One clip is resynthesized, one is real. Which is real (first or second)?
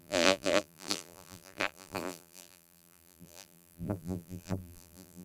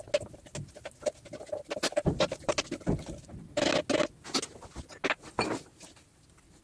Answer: second